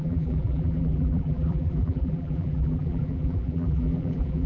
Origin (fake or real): fake